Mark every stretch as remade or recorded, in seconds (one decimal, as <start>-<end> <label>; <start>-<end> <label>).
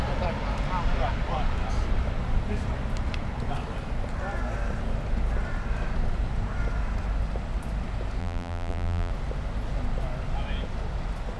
0.0-8.2 recorded; 8.2-9.1 remade; 9.1-11.4 recorded